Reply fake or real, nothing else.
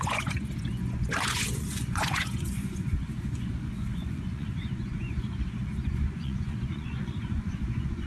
fake